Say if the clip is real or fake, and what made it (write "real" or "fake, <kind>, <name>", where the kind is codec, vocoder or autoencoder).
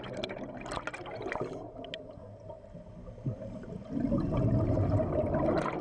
real